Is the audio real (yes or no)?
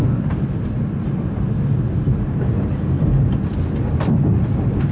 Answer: yes